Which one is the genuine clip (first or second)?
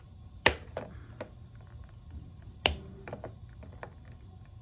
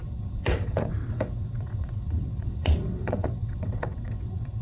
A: first